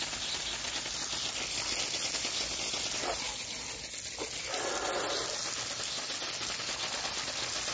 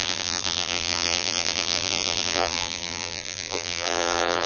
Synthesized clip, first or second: second